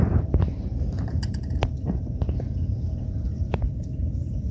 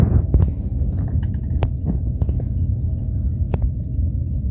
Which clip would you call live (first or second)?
second